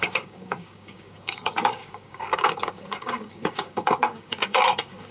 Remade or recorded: remade